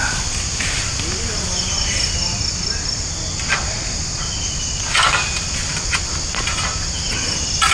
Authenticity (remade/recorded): recorded